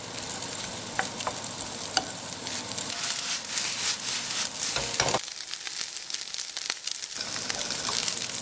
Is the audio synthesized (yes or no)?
yes